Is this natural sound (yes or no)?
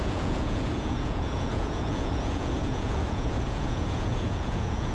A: no